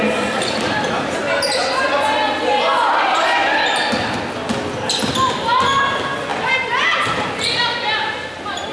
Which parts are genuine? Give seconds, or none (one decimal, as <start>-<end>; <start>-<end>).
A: 1.2-5.0